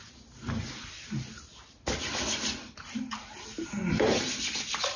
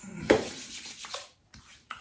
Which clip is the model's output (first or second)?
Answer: second